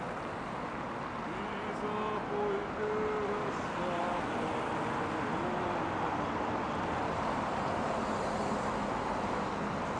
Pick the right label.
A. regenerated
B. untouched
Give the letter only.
B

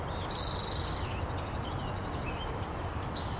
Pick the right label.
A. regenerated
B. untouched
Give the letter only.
B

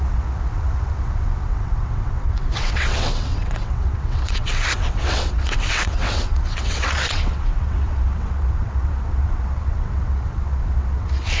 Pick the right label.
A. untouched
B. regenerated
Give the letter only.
B